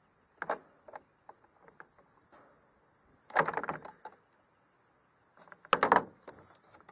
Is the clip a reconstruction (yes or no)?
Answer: no